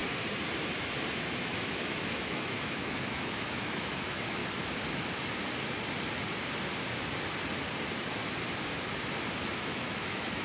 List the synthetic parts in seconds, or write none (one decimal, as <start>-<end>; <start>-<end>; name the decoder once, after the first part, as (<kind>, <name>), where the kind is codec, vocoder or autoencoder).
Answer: 1.4-4.4 (autoencoder, DAC-VAE); 9.6-10.4